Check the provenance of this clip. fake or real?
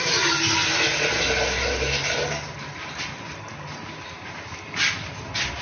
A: real